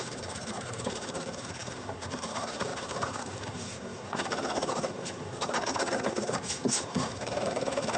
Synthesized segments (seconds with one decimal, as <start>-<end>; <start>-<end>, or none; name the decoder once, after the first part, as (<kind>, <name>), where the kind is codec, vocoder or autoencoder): 0.0-8.0 (codec, SNAC)